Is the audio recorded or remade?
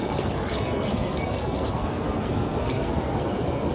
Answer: remade